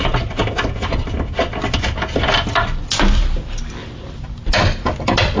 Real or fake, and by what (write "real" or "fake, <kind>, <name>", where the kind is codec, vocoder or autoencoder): real